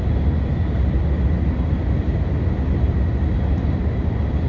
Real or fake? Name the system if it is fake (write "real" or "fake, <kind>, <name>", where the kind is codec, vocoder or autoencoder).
real